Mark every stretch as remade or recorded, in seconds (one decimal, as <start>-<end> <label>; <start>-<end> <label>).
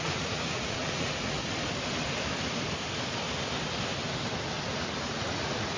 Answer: 0.0-1.4 remade; 1.4-4.7 recorded; 4.7-5.8 remade